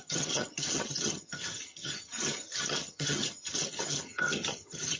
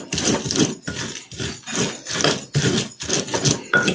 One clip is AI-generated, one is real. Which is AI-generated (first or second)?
first